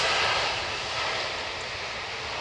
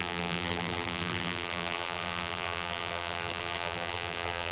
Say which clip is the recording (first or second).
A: first